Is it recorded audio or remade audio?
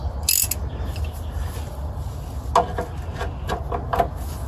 recorded